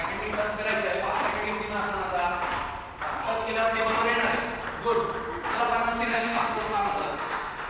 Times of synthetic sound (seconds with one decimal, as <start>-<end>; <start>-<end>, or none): 6.1-7.7

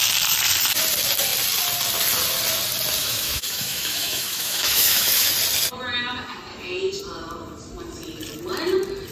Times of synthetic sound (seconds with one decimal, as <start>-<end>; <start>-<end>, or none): 3.0-5.3; 6.5-7.0

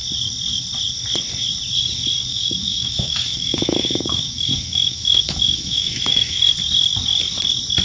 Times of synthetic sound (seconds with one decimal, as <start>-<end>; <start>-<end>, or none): 2.3-6.4

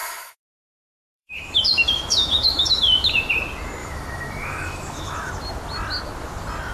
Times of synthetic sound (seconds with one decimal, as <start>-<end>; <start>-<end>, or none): 0.0-3.3; 3.8-5.3

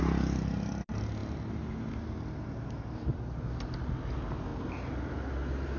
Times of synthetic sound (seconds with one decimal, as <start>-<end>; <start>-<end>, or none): none

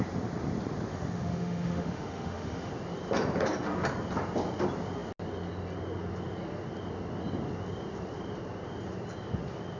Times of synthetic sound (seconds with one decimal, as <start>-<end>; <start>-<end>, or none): 0.9-2.7